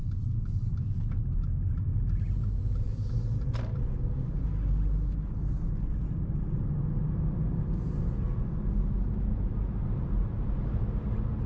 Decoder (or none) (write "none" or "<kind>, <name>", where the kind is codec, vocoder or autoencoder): none